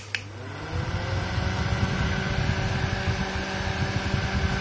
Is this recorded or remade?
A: recorded